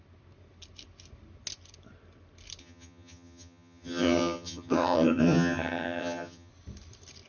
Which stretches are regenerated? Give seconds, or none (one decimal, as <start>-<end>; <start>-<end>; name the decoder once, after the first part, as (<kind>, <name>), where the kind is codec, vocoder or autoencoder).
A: 2.6-6.5 (vocoder, HiFi-GAN)